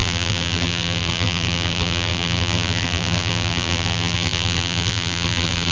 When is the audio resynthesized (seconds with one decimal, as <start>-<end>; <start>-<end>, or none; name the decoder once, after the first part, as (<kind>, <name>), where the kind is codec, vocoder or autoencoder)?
0.0-5.7 (vocoder, BigVGAN v2)